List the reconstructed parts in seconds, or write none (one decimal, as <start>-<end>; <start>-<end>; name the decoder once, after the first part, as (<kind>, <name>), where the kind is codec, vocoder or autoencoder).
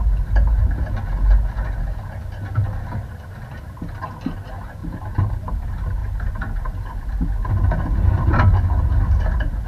4.8-5.3 (vocoder, BigVGAN v2)